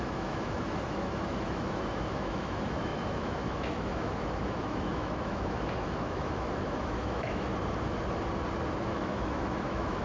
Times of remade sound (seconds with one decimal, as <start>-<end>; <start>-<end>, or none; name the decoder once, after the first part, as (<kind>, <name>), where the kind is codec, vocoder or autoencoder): 0.0-7.5 (autoencoder, DAC-VAE); 8.8-10.0